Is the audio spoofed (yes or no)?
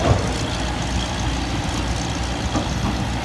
no